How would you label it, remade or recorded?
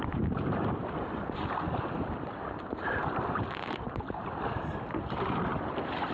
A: remade